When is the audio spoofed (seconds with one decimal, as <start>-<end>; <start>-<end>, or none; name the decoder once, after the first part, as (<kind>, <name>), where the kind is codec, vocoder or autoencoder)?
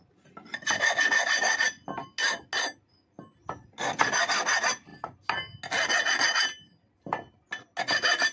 none